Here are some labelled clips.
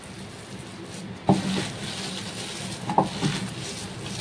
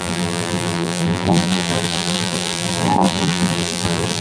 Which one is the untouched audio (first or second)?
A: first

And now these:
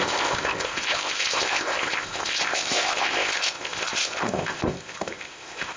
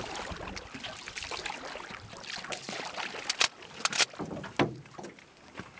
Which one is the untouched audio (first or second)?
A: second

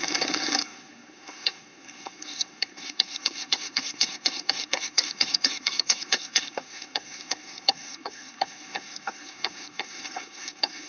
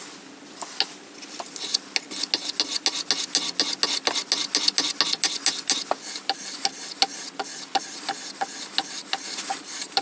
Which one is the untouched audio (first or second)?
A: second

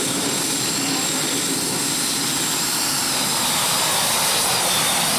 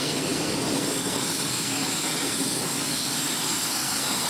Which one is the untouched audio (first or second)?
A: first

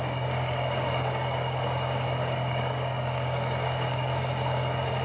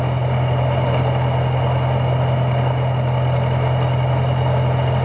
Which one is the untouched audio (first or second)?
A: second